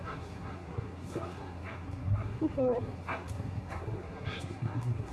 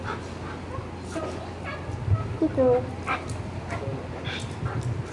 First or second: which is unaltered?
second